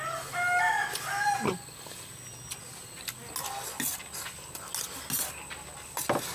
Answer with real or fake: real